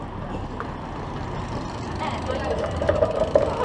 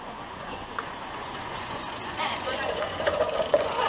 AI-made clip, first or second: second